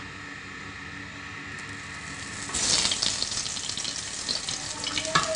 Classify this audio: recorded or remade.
recorded